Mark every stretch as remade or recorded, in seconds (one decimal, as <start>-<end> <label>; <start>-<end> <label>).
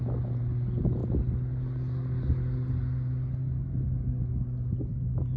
0.0-5.4 recorded